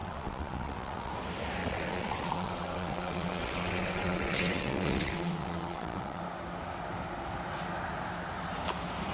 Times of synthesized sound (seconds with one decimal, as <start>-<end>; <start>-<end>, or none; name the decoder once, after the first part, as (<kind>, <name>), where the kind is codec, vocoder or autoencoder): 0.0-1.1 (vocoder, WaveNeXt); 1.6-6.2